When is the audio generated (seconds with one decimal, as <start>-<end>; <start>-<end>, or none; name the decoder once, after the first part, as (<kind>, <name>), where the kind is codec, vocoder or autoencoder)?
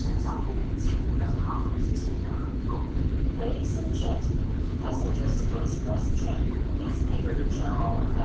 0.0-8.2 (codec, HILCodec)